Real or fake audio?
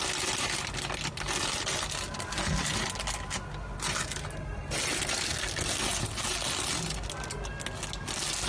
real